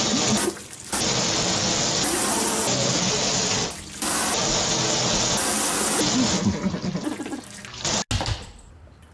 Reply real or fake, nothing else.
real